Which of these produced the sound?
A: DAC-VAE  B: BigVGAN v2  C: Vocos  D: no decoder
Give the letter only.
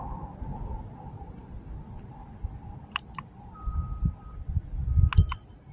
D